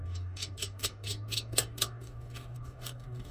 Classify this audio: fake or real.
fake